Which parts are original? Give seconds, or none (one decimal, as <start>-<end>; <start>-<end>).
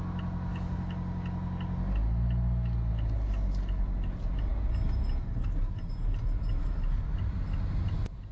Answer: 0.0-8.3